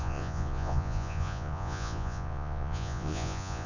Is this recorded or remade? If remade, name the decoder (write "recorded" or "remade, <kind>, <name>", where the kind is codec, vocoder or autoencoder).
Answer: remade, vocoder, Vocos